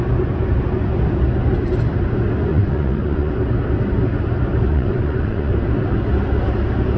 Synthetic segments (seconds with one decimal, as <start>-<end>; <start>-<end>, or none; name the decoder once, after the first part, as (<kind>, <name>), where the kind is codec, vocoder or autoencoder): 2.5-3.3 (vocoder, Vocos); 4.7-5.5